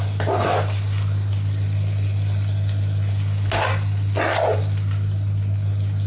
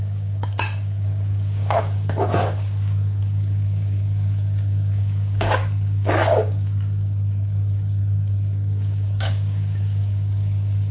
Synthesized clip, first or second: second